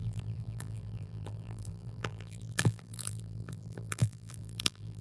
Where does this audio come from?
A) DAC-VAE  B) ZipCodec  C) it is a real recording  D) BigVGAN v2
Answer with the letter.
D